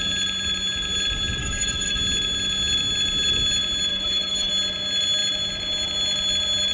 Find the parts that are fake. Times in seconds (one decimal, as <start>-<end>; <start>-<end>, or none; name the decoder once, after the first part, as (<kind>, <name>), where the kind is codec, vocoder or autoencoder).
1.4-2.0 (codec, DAC); 3.9-4.5